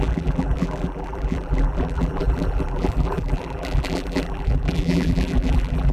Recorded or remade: remade